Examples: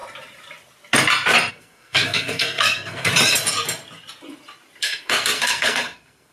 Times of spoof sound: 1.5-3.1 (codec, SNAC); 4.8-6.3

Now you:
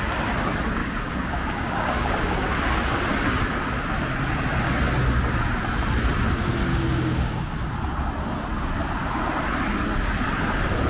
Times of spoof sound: 0.8-2.5 (codec, DAC); 6.7-7.5

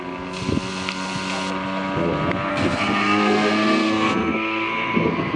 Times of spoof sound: 2.5-5.4 (codec, SNAC)

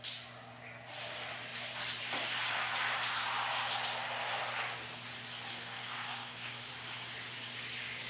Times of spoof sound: 5.5-6.7 (codec, SNAC)

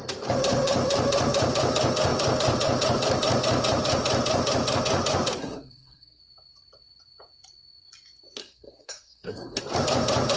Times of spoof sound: 5.4-6.2 (codec, SNAC); 8.4-9.6

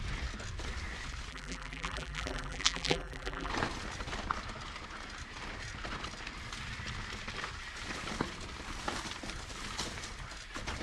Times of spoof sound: 1.3-3.5 (vocoder, BigVGAN v2)